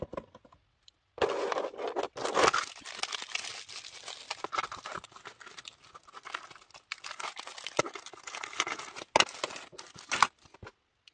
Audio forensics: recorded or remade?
recorded